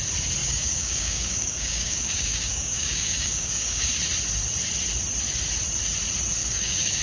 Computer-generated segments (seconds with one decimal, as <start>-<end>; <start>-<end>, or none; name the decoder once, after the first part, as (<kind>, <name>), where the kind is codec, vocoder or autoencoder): 0.4-3.9 (codec, DAC); 6.4-7.0